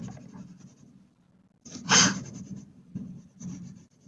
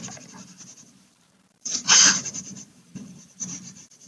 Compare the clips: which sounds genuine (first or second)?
first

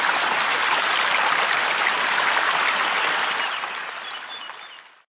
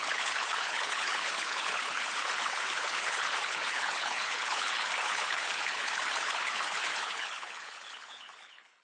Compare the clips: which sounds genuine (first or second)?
first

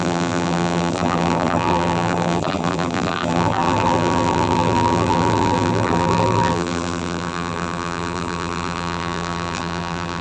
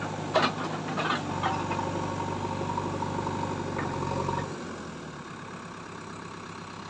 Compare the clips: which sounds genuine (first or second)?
second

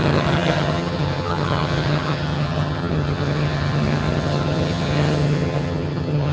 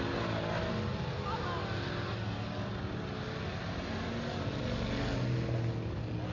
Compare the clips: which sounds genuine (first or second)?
second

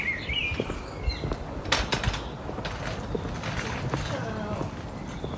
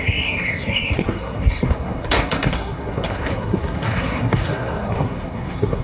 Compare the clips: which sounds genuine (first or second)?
first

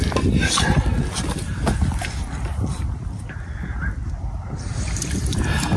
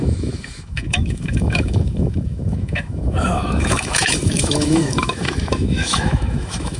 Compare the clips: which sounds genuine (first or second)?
first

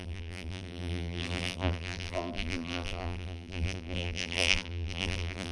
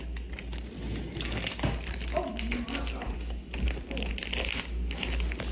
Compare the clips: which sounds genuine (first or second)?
second